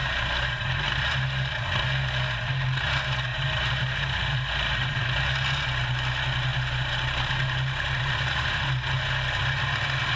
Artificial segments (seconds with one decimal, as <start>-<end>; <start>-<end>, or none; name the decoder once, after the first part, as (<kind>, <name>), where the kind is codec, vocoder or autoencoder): 0.0-1.6 (vocoder, BigVGAN v2); 3.3-5.0; 6.5-9.6